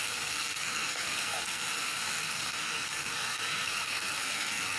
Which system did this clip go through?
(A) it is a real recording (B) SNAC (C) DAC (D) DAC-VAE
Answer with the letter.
B